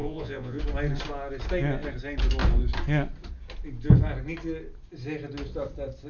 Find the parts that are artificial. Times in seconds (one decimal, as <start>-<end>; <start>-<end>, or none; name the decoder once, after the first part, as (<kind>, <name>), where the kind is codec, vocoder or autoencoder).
0.0-0.6 (vocoder, Vocos)

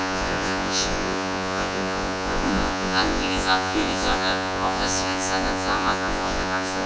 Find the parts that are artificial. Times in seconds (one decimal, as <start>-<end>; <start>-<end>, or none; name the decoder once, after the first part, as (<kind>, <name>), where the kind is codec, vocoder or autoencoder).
0.0-6.9 (vocoder, Vocos)

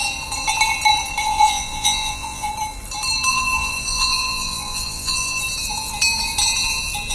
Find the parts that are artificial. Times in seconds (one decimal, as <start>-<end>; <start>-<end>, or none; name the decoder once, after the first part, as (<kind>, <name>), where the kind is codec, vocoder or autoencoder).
1.2-2.5 (vocoder, Vocos); 3.3-5.4

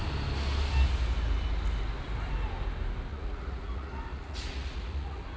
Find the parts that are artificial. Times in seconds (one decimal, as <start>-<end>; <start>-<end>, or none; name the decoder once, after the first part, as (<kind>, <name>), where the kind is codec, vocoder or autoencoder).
3.1-5.4 (vocoder, Vocos)

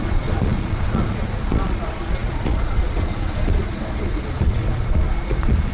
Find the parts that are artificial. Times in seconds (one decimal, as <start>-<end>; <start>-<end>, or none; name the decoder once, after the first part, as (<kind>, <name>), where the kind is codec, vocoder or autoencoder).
0.0-5.7 (vocoder, Vocos)